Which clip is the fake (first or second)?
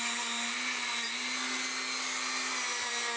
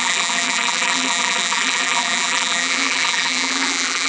second